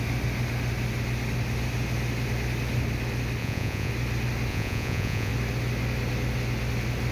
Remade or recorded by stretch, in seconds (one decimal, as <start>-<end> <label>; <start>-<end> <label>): 0.0-3.4 recorded; 3.4-3.9 remade; 3.9-4.5 recorded; 4.5-5.3 remade; 5.3-7.1 recorded